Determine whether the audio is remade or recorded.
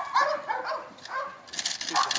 recorded